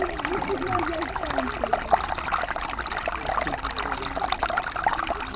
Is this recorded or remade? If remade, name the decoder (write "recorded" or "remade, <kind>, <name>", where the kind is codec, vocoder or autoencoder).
recorded